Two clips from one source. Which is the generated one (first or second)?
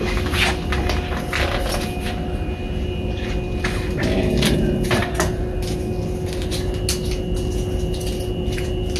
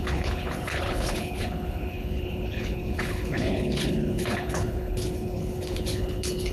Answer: second